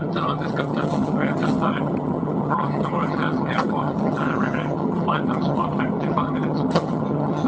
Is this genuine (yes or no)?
no